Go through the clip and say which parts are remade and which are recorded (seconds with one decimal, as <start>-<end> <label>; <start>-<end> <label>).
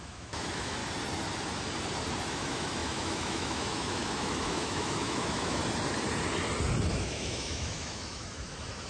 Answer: 0.0-0.8 remade; 0.8-2.3 recorded; 2.3-5.6 remade; 5.6-6.9 recorded; 6.9-8.9 remade